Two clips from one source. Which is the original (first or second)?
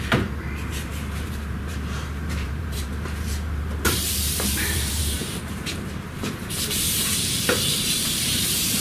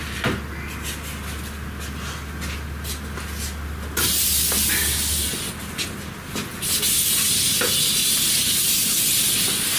second